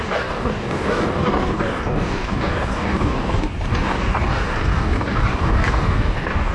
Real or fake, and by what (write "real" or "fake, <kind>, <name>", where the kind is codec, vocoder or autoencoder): fake, codec, DAC